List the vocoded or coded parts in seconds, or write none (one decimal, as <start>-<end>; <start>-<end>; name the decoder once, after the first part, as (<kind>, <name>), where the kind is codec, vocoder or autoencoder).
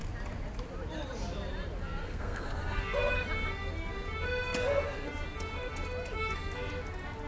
2.0-3.1 (codec, SNAC)